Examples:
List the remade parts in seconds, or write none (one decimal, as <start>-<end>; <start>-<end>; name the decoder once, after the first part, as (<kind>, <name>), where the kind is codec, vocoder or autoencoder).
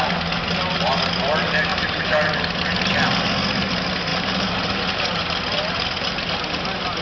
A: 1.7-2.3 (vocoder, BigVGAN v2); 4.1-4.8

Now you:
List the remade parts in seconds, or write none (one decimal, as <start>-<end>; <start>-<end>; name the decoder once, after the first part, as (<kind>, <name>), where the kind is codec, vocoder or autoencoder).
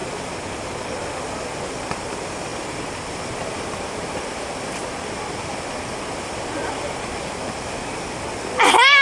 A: 2.5-7.4 (vocoder, BigVGAN v2)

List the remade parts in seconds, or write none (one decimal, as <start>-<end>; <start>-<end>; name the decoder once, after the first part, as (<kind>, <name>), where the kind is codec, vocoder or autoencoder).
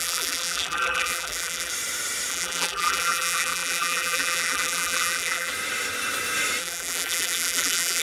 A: 0.0-1.7 (vocoder, BigVGAN v2); 2.3-5.5; 6.6-8.0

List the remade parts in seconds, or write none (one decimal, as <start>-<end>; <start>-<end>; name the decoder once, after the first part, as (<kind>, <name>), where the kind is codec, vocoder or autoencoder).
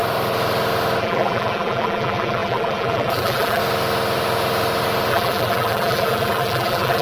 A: 1.0-3.6 (vocoder, BigVGAN v2); 5.1-7.0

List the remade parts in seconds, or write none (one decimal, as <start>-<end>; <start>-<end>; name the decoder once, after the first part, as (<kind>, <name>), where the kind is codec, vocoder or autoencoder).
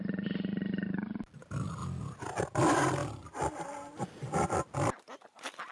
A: 1.8-2.4 (vocoder, BigVGAN v2); 3.0-5.7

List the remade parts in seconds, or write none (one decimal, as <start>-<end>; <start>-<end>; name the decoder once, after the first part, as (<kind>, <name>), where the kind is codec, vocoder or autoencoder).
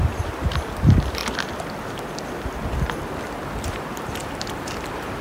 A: 0.0-1.2 (vocoder, BigVGAN v2); 3.6-5.2